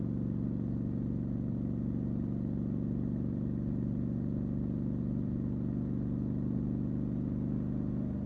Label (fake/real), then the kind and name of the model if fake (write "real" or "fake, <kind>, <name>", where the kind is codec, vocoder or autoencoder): real